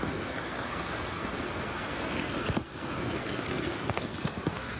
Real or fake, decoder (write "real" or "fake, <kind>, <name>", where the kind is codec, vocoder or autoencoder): fake, codec, SNAC